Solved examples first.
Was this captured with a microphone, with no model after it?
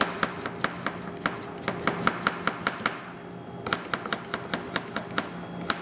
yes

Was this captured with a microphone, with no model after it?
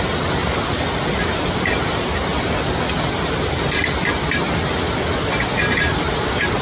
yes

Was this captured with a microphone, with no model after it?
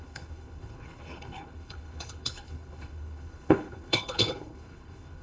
no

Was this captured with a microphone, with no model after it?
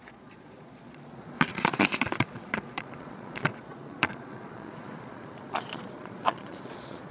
no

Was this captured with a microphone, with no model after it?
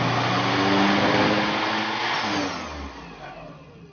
yes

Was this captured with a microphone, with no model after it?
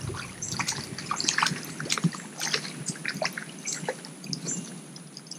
yes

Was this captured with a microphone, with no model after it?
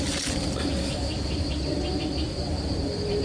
yes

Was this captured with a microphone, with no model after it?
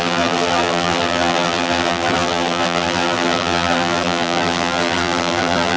no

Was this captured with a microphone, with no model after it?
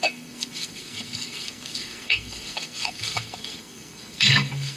no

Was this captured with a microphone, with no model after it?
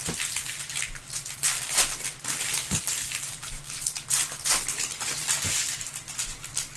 yes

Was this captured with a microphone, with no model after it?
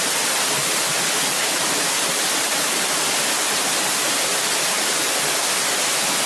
yes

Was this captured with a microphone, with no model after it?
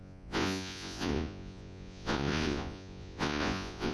no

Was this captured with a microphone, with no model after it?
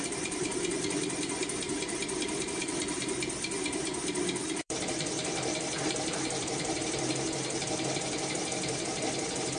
no